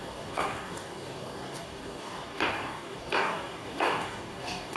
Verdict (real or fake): fake